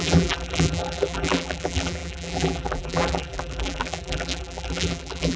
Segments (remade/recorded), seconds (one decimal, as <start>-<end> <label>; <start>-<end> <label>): 0.0-5.4 remade